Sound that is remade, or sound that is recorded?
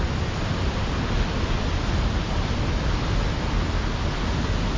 recorded